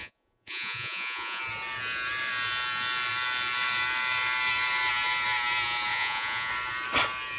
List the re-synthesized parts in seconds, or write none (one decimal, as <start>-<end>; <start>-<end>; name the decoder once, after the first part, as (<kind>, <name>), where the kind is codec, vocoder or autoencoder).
0.0-1.4 (vocoder, Vocos); 5.9-6.5